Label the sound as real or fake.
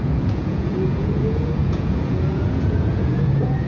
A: fake